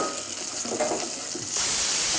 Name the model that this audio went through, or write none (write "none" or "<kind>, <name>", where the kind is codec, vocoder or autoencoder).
none